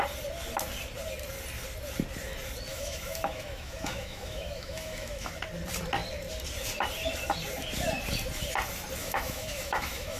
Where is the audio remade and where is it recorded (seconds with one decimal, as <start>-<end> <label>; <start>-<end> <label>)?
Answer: 0.0-2.7 recorded; 2.7-5.3 remade; 5.3-9.0 recorded; 9.0-10.2 remade